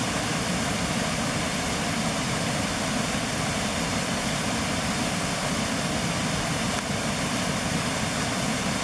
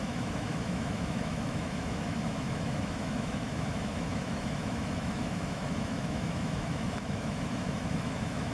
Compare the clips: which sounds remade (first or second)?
second